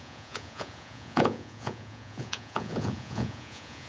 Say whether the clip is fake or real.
fake